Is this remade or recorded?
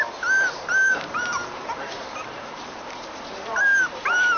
remade